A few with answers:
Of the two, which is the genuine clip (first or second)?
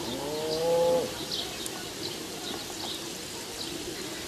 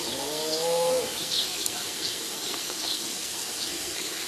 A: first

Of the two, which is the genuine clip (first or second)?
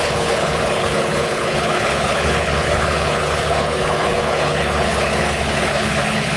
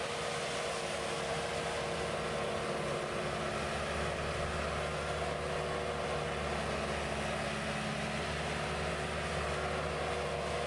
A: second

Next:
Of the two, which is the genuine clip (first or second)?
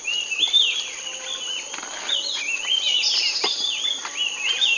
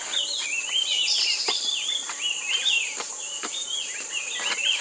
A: first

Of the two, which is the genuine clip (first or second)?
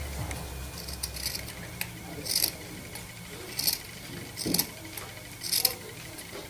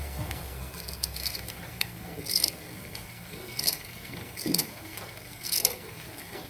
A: first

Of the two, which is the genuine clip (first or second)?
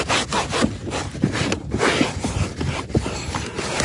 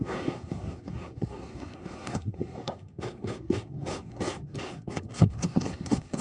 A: first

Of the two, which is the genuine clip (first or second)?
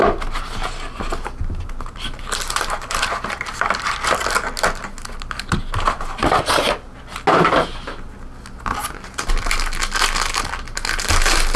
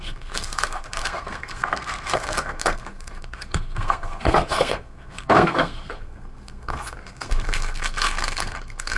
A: first